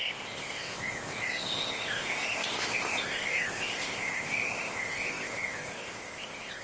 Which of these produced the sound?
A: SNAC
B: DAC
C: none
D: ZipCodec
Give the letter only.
D